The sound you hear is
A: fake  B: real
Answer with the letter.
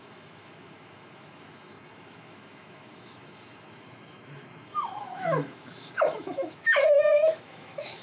A